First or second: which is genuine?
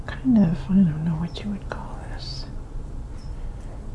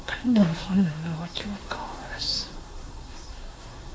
first